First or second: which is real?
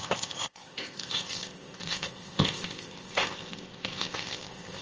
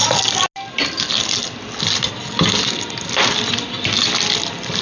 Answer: second